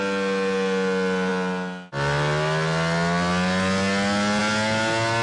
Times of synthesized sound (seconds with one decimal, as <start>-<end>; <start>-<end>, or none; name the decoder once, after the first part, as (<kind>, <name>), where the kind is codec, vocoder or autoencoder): none